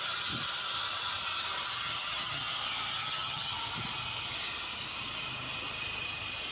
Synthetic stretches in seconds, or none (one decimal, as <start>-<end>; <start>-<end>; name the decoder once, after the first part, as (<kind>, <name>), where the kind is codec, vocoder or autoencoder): 1.8-2.5 (vocoder, HiFi-GAN); 3.0-3.5